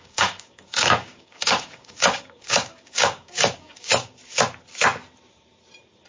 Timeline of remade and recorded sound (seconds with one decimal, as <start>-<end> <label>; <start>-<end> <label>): 0.0-4.2 remade; 4.2-6.1 recorded